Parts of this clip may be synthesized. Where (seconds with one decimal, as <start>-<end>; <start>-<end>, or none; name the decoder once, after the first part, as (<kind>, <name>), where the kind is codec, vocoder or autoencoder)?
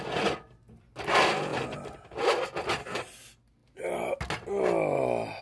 none